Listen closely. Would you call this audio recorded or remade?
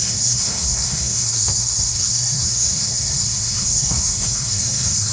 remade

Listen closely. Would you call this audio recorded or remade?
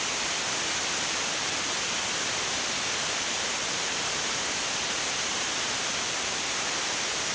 recorded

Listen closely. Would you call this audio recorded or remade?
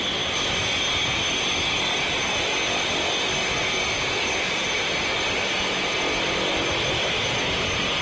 recorded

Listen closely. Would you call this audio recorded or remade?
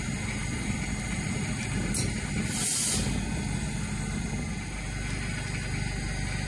recorded